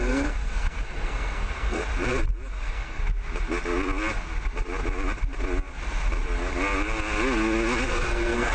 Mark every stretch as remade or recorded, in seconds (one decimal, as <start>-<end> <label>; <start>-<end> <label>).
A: 0.0-1.8 remade; 1.8-2.6 recorded; 2.6-3.0 remade; 3.0-7.9 recorded; 7.9-8.5 remade